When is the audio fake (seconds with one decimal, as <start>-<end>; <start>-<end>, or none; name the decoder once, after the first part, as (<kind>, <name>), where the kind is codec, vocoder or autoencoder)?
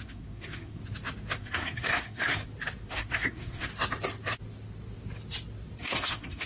0.0-0.8 (codec, SNAC); 1.4-2.4; 2.9-3.7; 5.8-6.5